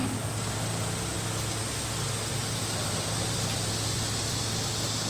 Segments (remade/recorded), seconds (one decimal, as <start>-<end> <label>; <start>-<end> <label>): 0.0-5.1 recorded